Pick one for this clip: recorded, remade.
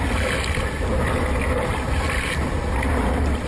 recorded